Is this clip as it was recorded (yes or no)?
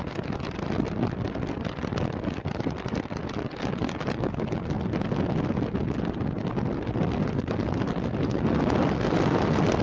yes